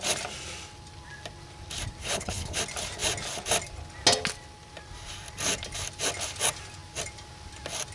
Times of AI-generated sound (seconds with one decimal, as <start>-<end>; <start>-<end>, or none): 2.0-2.6